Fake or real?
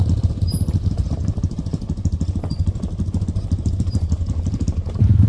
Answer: fake